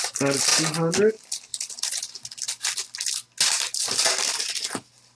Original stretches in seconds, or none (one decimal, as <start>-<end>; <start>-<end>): 0.0-5.1